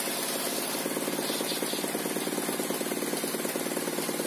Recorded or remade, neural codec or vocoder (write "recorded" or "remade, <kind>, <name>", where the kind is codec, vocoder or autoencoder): recorded